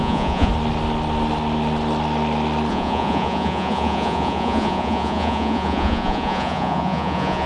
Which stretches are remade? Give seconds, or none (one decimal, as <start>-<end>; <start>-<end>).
0.0-0.5; 2.7-7.5